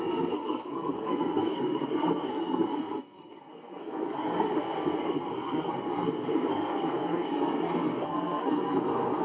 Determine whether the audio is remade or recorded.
remade